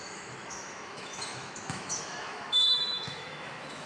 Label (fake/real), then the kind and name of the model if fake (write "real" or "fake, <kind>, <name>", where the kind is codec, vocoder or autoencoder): fake, autoencoder, DAC-VAE